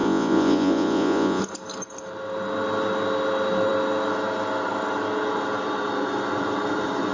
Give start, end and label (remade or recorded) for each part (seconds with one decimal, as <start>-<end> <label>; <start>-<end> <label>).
0.0-1.4 remade; 1.4-7.1 recorded